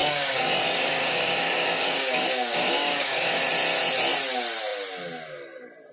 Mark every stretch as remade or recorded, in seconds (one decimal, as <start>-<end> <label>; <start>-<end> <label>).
0.0-3.4 remade; 3.4-5.9 recorded